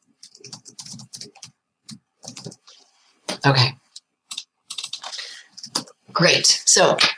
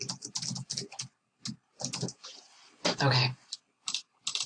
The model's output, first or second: first